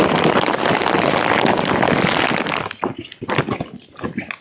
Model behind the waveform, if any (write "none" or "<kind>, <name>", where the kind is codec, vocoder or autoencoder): none